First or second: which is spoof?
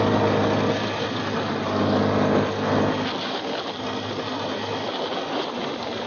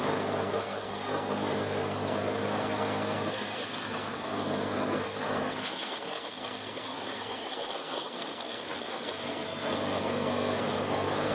second